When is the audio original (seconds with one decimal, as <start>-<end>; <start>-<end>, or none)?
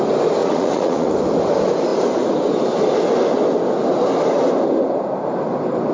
0.0-0.4; 1.1-5.9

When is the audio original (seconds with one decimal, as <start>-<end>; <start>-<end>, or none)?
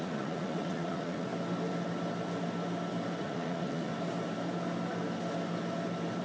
1.3-3.2; 3.9-6.2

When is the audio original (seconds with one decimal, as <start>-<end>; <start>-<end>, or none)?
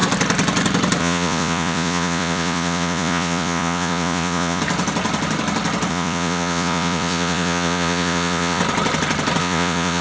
0.0-1.0; 4.6-5.9; 8.6-9.4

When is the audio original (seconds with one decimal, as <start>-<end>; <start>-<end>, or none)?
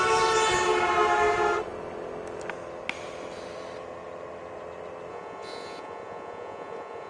0.0-5.1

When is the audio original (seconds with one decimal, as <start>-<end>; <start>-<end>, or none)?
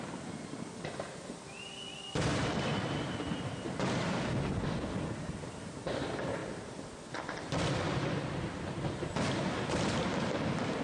0.0-10.8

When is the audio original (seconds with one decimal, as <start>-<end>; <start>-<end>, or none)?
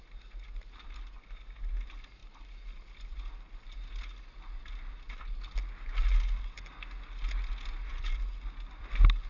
0.0-9.3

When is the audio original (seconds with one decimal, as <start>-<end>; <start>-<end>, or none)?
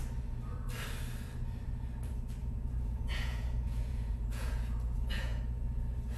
0.0-2.4; 5.4-6.2